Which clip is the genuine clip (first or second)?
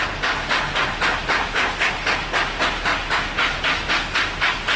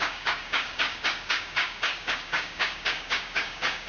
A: first